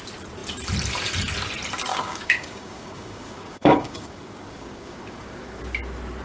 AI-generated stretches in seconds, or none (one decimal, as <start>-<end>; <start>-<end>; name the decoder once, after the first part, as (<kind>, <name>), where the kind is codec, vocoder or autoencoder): 1.9-5.6 (codec, DAC)